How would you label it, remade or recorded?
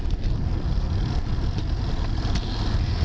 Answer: recorded